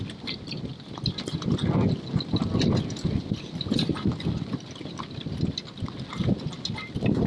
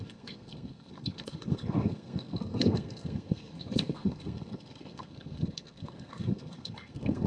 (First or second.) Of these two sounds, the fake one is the second